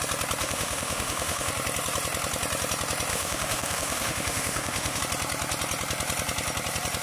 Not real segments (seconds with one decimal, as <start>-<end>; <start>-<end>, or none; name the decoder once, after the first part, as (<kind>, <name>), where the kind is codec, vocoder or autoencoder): 0.4-1.5 (autoencoder, DAC-VAE); 3.1-5.0